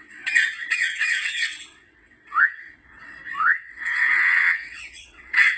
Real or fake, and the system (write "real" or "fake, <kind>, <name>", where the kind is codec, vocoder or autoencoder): fake, vocoder, WaveNeXt